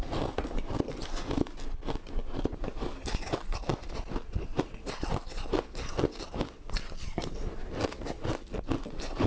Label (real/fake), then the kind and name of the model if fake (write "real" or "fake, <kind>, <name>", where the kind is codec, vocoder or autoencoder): real